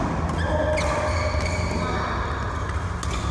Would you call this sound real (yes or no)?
yes